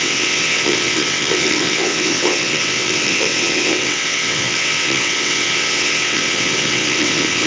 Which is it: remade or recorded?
remade